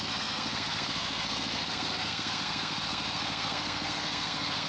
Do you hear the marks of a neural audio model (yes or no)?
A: yes